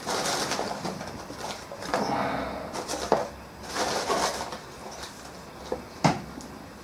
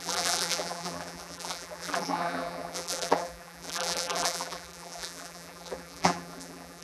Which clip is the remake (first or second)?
second